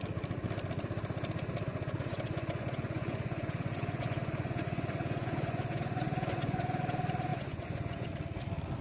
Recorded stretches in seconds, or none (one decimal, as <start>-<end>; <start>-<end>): 0.0-1.7; 6.8-7.3; 8.1-8.8